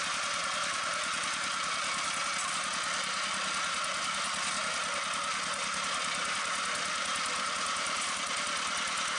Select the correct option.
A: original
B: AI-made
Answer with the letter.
A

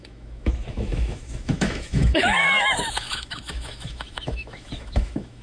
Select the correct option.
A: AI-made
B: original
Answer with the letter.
A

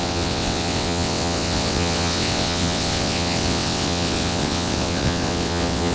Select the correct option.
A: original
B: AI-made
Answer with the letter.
B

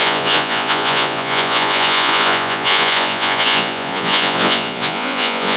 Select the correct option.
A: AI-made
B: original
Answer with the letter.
A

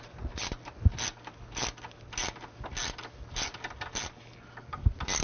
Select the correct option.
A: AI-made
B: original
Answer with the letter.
B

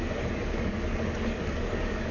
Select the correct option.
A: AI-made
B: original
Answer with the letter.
A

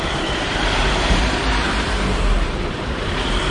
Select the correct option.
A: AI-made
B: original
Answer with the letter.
A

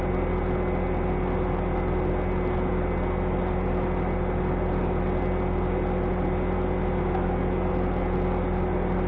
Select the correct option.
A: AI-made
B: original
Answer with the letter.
B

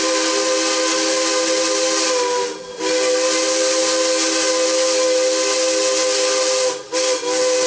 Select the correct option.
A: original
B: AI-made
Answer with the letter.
A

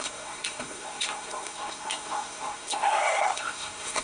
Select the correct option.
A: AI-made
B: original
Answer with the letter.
A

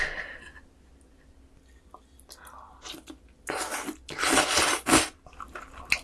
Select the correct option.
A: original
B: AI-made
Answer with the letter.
A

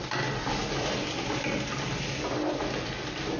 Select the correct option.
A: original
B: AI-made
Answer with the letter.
A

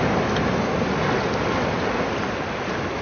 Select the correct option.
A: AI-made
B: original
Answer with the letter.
B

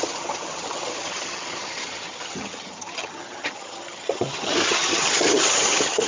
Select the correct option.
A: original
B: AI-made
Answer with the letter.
B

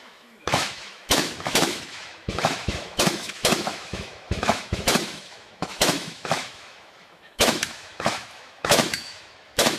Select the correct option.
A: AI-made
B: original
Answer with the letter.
A